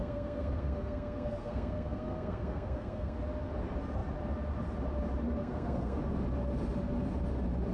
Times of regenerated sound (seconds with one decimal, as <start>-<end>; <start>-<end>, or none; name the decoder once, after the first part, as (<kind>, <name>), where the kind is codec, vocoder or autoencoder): 0.0-3.2 (codec, SNAC); 5.4-6.0